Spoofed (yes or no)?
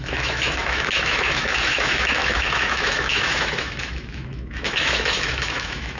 yes